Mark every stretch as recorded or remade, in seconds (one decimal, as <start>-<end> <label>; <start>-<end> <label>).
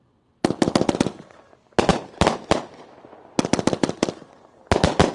0.0-5.1 recorded